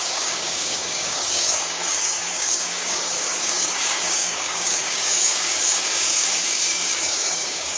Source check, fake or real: fake